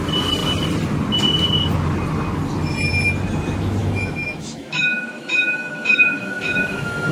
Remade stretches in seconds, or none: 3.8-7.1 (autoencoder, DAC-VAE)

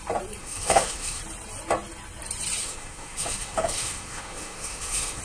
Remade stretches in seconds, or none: 0.4-1.2 (autoencoder, DAC-VAE); 2.6-5.2

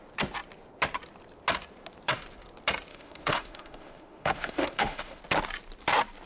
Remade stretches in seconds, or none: 2.9-5.2 (autoencoder, DAC-VAE)

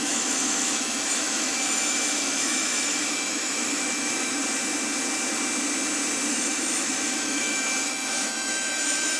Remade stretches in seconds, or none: 0.0-4.4 (autoencoder, DAC-VAE); 6.3-9.2

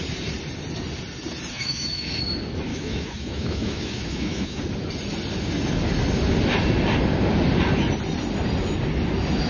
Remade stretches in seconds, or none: 1.5-2.2 (autoencoder, DAC-VAE); 2.7-4.6

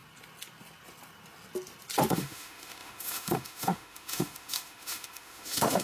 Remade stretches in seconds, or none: 2.1-5.8 (autoencoder, DAC-VAE)